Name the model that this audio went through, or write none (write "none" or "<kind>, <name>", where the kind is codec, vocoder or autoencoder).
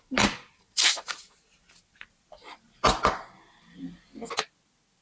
none